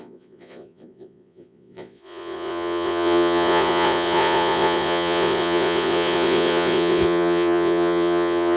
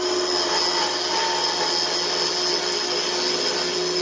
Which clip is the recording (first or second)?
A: second